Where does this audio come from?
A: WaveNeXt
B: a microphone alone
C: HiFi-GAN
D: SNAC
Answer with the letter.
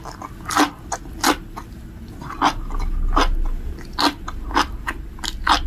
B